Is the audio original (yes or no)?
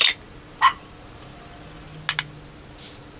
yes